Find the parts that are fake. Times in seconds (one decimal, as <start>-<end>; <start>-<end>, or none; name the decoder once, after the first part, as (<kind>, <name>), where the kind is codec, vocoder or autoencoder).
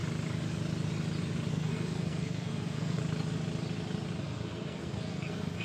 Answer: 1.5-3.0 (codec, SNAC); 4.2-5.6